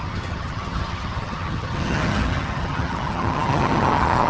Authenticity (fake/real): fake